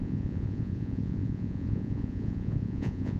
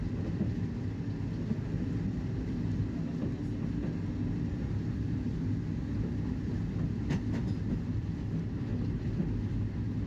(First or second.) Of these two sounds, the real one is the second